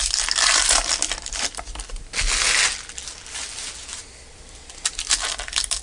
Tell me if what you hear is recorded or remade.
recorded